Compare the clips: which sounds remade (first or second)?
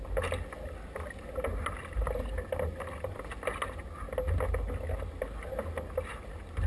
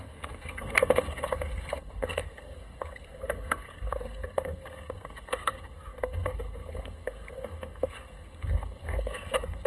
second